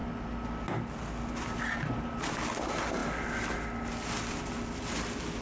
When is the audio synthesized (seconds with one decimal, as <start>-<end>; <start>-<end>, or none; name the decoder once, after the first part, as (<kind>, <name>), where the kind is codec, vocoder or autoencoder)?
none